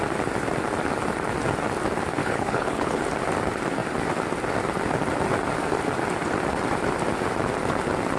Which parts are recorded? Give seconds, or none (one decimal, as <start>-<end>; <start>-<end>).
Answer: 0.0-2.2; 3.0-8.2